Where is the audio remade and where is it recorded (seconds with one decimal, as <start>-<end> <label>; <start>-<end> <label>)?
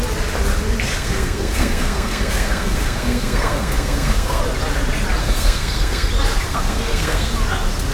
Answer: 0.0-0.9 recorded; 0.9-4.4 remade; 4.4-5.2 recorded; 5.2-6.1 remade; 6.1-6.5 recorded; 6.5-7.3 remade; 7.3-7.9 recorded